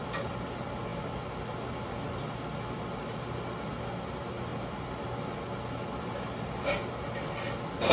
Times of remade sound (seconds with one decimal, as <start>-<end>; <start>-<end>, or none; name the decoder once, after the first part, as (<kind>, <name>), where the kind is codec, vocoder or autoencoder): none